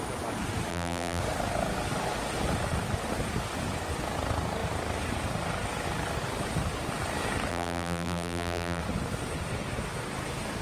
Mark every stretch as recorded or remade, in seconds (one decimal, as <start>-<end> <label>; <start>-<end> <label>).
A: 0.0-0.7 recorded; 0.7-1.2 remade; 1.2-7.5 recorded; 7.5-8.8 remade; 8.8-10.6 recorded